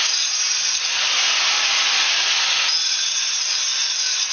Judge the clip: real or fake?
real